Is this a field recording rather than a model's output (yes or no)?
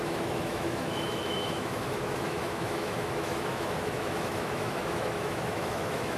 no